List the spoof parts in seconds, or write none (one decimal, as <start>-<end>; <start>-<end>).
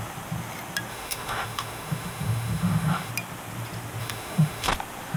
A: 0.9-3.1; 4.0-4.7